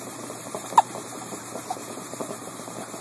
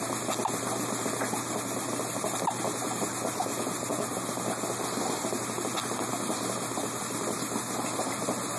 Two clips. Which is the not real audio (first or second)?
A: first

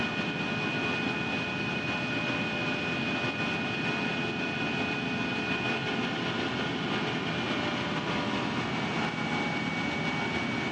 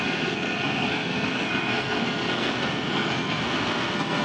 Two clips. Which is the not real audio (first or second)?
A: second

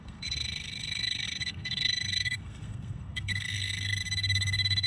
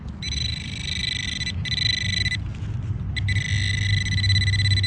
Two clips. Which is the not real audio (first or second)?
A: first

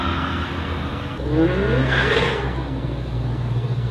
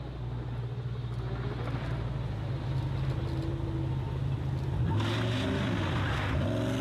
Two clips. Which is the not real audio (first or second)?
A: first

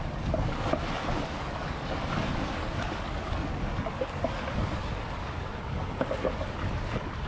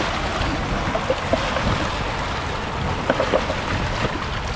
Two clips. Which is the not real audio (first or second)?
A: first